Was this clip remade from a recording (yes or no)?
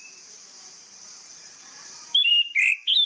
yes